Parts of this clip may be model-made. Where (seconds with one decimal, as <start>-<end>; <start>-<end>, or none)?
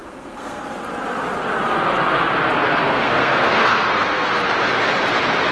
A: 0.0-0.6; 2.8-4.3